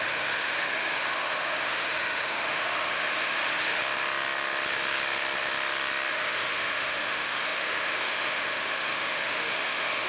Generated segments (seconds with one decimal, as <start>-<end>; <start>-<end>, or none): 0.0-3.8; 6.1-10.1